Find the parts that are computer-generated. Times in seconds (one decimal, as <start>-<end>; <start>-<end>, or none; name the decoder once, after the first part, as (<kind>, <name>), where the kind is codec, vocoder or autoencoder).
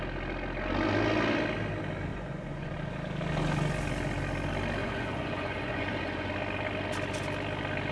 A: 2.1-2.7 (vocoder, Vocos); 4.8-6.3